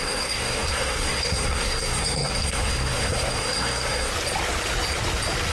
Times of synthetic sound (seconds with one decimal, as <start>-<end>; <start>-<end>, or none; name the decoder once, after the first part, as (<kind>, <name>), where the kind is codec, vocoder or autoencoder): 0.0-4.1 (codec, SNAC)